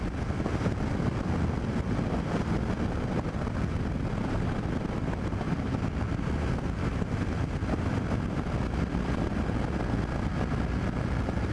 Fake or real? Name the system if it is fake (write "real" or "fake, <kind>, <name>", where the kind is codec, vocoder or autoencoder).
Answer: real